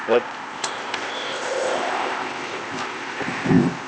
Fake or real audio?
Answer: fake